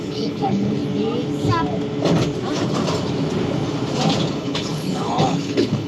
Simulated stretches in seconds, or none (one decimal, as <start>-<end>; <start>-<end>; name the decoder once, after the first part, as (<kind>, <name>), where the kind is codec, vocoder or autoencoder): 0.0-0.8 (codec, HILCodec); 4.3-5.9